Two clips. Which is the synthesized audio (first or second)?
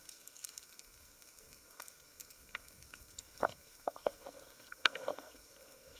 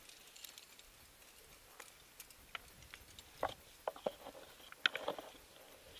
first